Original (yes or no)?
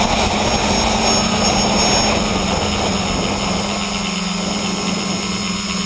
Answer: yes